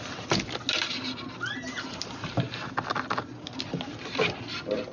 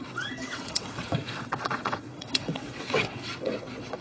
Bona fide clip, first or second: first